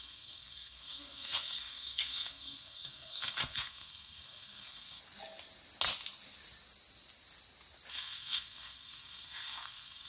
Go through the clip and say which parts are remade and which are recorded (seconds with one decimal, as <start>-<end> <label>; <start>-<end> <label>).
0.0-5.0 remade; 5.0-7.9 recorded; 7.9-10.1 remade